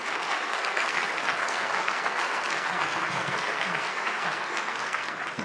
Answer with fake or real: fake